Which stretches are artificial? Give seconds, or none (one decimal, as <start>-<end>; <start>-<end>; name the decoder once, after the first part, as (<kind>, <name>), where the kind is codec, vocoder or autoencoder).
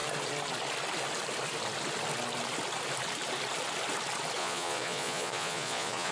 4.4-6.1 (vocoder, Vocos)